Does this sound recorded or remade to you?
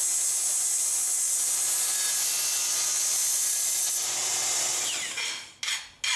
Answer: recorded